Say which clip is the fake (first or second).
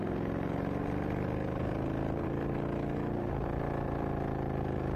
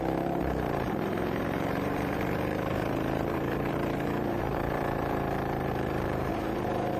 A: second